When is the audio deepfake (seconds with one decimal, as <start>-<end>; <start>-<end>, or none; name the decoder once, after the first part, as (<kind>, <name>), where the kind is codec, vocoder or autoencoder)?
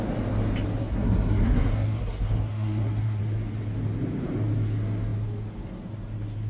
0.8-3.2 (codec, SNAC)